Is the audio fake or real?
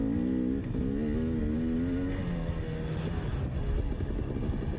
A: real